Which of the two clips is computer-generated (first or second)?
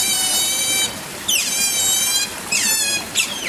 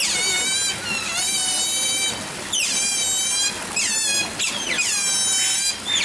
first